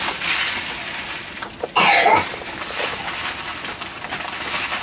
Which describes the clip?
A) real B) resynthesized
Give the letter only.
A